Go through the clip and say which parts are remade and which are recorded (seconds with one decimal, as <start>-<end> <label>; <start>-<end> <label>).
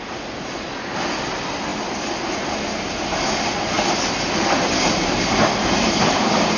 0.0-6.6 recorded